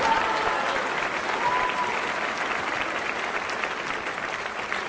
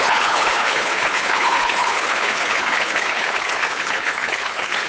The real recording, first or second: first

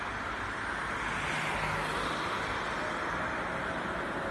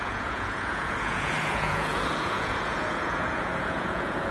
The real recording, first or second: first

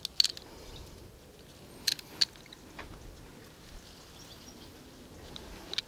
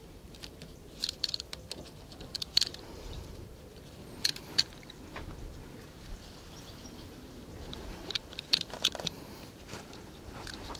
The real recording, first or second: first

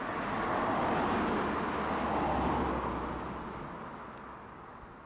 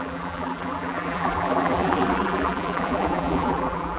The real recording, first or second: first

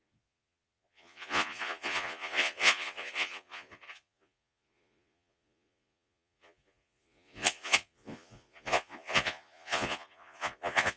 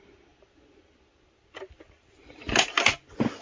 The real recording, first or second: second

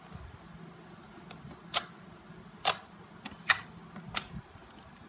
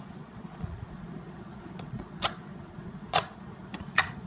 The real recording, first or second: first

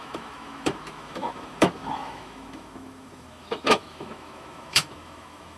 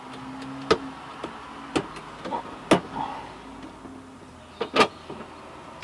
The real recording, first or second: second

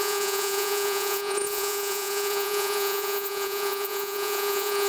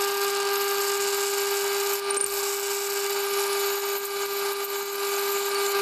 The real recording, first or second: second